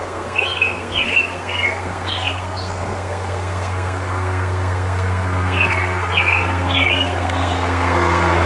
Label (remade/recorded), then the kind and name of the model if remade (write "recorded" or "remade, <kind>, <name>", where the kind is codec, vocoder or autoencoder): remade, codec, SNAC